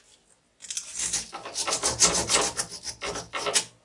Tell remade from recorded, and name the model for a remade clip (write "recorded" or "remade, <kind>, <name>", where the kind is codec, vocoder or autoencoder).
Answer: recorded